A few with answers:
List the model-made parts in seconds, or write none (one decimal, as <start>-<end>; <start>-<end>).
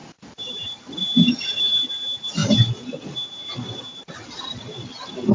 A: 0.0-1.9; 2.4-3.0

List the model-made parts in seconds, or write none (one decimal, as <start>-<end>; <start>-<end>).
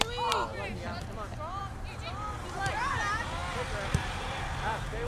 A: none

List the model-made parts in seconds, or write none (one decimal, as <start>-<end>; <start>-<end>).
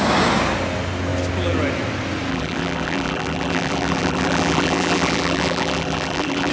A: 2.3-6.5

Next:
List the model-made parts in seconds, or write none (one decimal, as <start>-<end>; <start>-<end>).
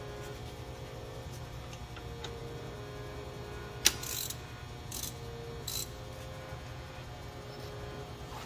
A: 0.4-1.8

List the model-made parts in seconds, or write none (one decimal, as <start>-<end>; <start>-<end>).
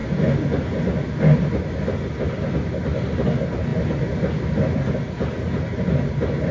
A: 3.7-4.6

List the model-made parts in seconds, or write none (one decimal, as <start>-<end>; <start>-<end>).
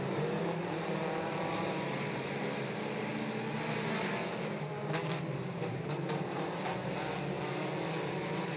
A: 0.0-3.1; 5.0-6.8; 8.1-8.6